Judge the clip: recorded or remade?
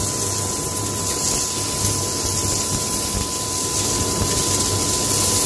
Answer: recorded